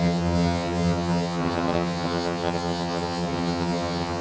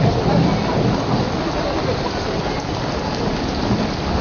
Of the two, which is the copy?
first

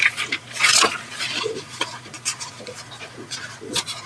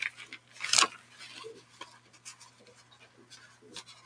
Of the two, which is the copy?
first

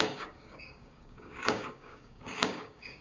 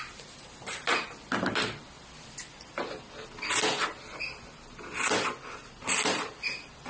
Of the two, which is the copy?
first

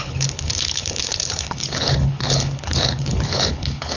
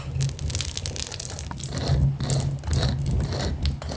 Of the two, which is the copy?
first